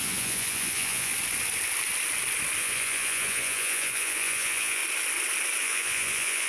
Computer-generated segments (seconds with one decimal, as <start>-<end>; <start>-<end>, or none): 0.0-1.1; 2.6-4.8; 5.6-6.5